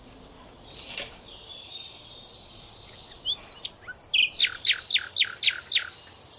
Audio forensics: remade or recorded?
recorded